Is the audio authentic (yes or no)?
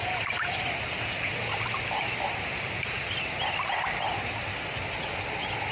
yes